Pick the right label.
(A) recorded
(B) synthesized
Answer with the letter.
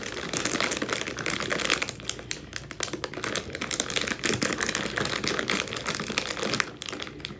A